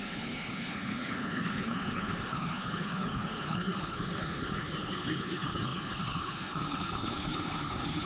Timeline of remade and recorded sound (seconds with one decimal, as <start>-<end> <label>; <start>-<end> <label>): 0.0-8.1 remade